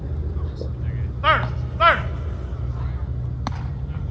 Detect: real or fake real